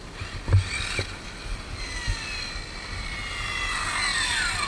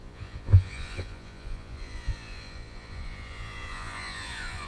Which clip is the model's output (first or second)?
second